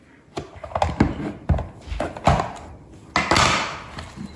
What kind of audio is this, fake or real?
real